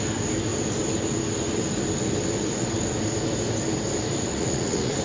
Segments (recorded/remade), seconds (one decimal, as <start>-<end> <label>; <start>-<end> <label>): 0.0-4.3 recorded; 4.3-5.0 remade